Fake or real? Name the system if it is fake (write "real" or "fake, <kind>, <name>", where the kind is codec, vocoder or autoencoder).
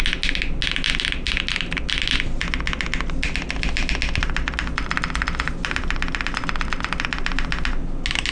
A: real